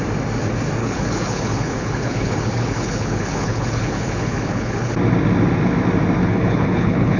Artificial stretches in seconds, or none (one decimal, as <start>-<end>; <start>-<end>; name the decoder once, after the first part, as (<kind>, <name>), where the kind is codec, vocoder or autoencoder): 0.8-4.9 (codec, HILCodec); 6.2-7.2